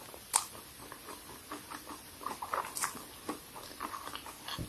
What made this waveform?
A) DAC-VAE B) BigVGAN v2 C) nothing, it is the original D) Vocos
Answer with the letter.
C